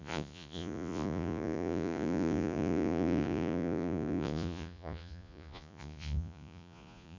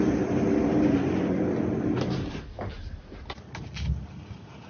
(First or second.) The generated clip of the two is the first